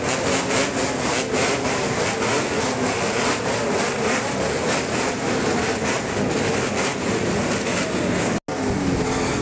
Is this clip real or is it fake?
real